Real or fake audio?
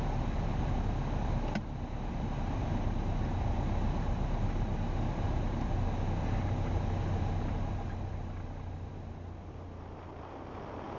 real